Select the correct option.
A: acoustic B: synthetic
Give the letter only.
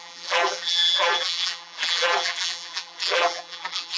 B